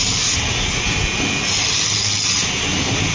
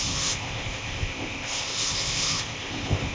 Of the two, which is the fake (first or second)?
second